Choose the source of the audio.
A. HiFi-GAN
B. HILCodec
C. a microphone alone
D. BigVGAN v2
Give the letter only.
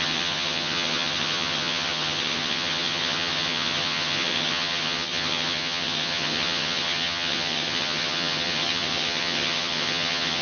A